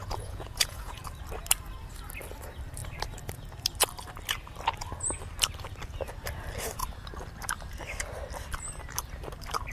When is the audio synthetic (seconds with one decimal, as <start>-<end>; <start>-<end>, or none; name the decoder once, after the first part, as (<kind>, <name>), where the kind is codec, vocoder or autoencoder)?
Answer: 0.0-1.0 (vocoder, Vocos)